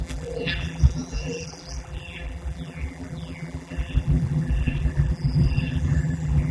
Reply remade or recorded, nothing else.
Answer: remade